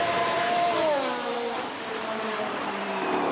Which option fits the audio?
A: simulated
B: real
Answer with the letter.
A